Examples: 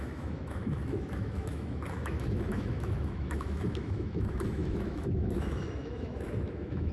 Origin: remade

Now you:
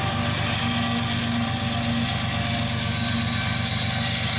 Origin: recorded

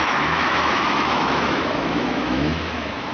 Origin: remade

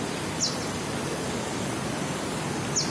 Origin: recorded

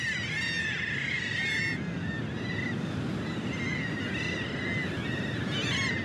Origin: recorded